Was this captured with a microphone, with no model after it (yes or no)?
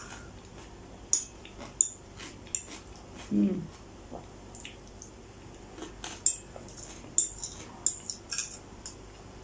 yes